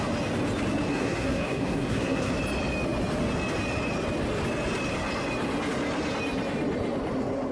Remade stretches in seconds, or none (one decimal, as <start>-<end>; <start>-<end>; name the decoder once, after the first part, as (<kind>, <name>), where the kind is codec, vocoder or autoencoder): 0.9-2.3 (codec, SNAC)